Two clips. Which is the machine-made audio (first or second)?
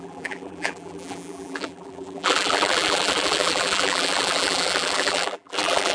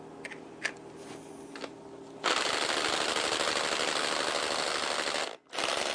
first